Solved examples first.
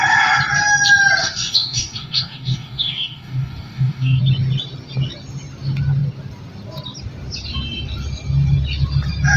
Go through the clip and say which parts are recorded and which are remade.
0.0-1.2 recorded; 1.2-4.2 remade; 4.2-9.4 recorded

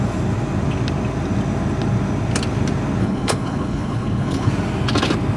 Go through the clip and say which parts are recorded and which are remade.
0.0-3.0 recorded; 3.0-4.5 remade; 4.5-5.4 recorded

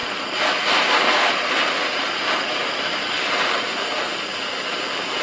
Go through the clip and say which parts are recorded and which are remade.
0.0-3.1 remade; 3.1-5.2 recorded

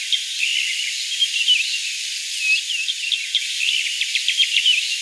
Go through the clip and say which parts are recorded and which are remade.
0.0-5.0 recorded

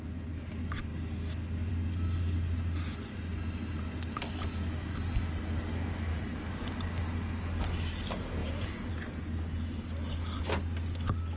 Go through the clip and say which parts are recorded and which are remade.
0.0-8.4 recorded; 8.4-8.9 remade; 8.9-11.4 recorded